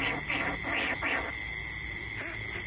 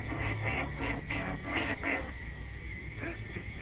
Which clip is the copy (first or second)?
second